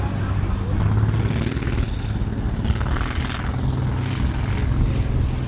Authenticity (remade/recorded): recorded